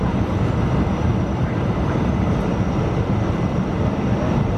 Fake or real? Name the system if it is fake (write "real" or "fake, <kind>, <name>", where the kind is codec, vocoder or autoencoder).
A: fake, vocoder, BigVGAN v2